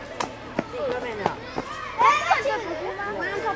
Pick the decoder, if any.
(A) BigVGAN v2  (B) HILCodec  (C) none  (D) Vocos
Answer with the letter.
C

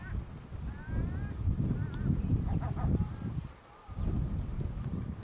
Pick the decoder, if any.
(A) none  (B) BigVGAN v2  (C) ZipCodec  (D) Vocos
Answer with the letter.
A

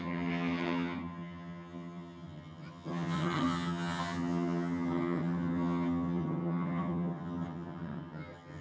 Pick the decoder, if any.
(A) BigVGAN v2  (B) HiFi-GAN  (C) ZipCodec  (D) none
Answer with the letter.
B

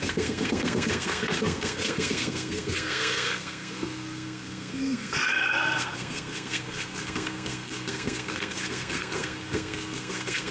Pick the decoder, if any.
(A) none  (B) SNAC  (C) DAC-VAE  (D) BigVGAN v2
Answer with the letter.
B